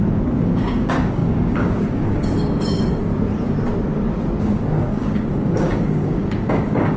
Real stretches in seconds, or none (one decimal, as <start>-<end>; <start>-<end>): 3.1-4.4